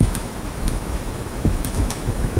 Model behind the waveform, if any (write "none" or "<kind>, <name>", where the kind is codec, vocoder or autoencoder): autoencoder, DAC-VAE